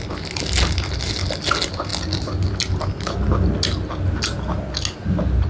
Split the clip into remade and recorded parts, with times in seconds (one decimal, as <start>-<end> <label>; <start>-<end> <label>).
0.0-5.5 recorded